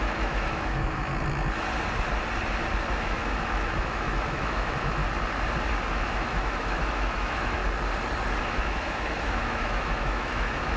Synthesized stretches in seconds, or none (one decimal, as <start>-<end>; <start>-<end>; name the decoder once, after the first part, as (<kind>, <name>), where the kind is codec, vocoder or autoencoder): 0.0-1.1 (autoencoder, DAC-VAE); 2.9-5.0; 5.9-7.6; 8.4-10.8